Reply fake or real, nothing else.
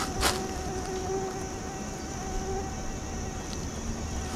real